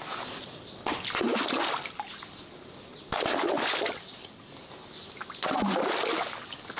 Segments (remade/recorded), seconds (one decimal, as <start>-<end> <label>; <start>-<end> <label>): 0.0-6.8 recorded